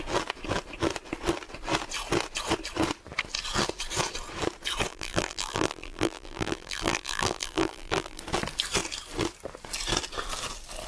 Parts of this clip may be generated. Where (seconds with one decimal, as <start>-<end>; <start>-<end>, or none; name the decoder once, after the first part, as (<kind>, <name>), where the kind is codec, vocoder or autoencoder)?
4.9-8.2 (vocoder, BigVGAN v2)